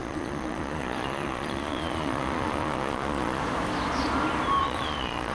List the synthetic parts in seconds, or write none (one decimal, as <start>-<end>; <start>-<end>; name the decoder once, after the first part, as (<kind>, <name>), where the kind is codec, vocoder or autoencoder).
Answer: 0.0-3.4 (vocoder, Vocos); 4.6-5.3